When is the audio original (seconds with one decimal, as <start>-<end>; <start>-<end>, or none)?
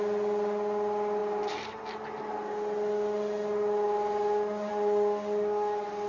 0.0-6.1